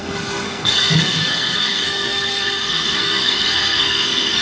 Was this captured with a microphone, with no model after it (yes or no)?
no